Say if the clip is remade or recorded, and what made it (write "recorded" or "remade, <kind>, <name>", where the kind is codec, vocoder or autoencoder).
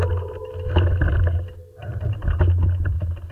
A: recorded